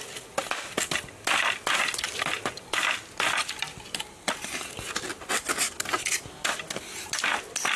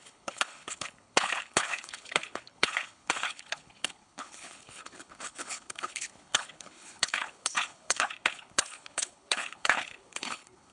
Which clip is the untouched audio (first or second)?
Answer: first